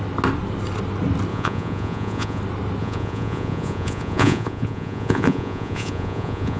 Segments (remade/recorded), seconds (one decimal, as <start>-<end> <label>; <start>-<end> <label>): 0.0-1.3 recorded; 1.3-2.4 remade; 2.4-2.8 recorded; 2.8-6.6 remade